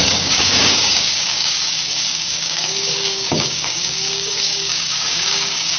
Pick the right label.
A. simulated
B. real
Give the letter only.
A